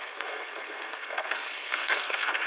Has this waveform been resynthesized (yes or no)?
yes